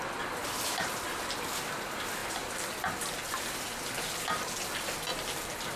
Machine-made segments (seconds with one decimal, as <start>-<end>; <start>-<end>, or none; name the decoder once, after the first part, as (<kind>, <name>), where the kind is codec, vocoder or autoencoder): none